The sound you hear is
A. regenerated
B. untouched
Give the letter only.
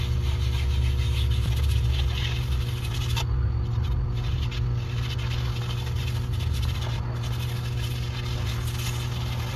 B